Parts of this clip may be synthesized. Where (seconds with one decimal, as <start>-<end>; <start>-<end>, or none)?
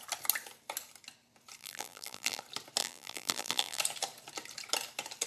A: 1.6-2.4; 2.8-3.8